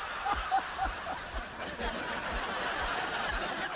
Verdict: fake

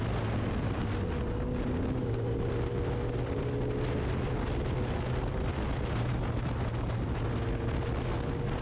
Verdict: real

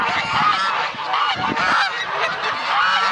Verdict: fake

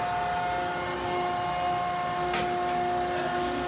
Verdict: real